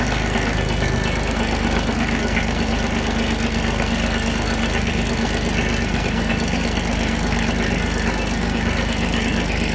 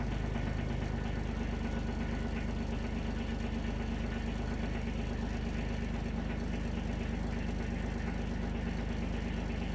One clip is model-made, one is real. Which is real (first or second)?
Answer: second